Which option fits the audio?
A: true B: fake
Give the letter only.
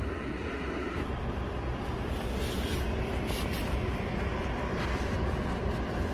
A